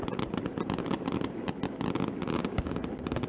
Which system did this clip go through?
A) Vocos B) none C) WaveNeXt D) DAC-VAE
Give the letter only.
B